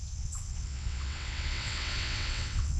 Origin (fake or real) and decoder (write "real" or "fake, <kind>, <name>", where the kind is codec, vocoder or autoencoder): fake, vocoder, WaveNeXt